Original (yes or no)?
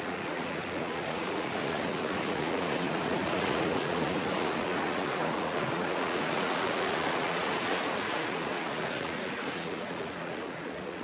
no